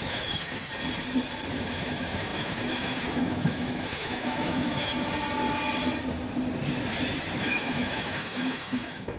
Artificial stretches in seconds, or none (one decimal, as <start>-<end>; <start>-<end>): 0.0-0.7; 1.5-4.9; 7.4-9.2